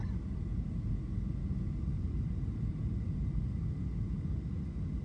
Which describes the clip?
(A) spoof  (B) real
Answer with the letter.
B